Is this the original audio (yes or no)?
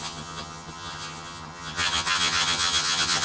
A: no